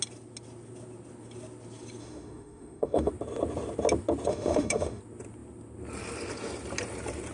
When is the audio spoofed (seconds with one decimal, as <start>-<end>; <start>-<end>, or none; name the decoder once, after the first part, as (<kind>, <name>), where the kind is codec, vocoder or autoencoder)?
2.0-3.1 (autoencoder, DAC-VAE); 4.3-5.0